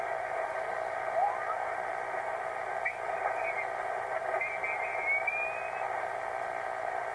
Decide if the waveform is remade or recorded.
remade